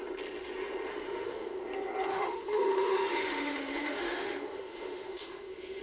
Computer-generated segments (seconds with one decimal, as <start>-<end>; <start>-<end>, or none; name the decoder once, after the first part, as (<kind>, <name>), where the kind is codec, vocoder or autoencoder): 0.9-1.6 (autoencoder, DAC-VAE); 2.1-5.8